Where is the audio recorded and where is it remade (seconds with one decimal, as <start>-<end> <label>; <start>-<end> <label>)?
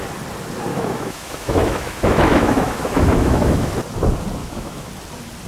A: 0.0-0.7 recorded; 0.7-3.7 remade; 3.7-4.4 recorded; 4.4-4.9 remade; 4.9-5.5 recorded